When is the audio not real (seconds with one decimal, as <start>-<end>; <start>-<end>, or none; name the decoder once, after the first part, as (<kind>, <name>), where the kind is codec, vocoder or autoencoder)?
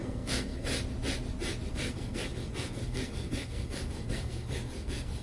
0.0-0.7 (codec, SNAC); 1.7-5.2